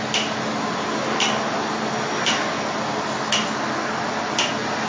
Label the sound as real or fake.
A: real